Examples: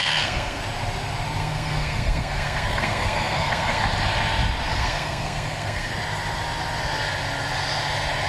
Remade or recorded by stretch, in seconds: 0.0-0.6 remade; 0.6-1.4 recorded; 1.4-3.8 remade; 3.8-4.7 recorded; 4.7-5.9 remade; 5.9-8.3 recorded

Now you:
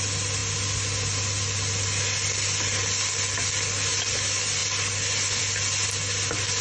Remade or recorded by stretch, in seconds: 0.0-6.6 recorded

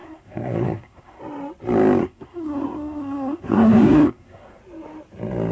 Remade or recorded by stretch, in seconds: 0.0-1.2 remade; 1.2-2.0 recorded; 2.0-4.6 remade; 4.6-5.5 recorded

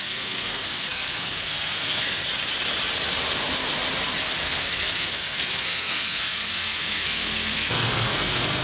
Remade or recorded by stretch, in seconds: 0.0-2.2 remade; 2.2-4.4 recorded; 4.4-8.6 remade

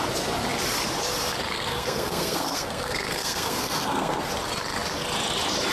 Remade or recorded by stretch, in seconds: 0.0-1.5 recorded; 1.5-4.3 remade; 4.3-5.7 recorded